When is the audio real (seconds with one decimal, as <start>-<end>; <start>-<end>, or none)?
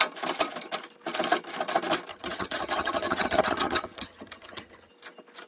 0.0-2.1; 4.9-5.5